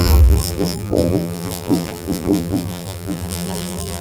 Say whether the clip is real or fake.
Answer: fake